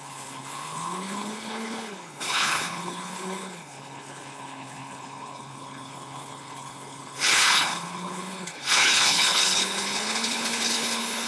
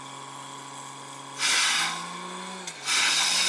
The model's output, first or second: first